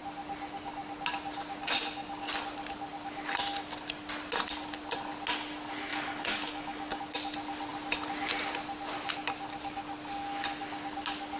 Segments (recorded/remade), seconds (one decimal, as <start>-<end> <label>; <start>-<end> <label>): 0.0-5.9 recorded; 5.9-7.0 remade; 7.0-11.4 recorded